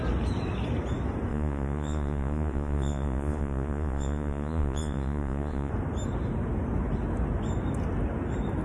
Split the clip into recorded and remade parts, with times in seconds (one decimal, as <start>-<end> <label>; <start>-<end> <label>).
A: 0.0-1.3 recorded; 1.3-5.7 remade; 5.7-8.6 recorded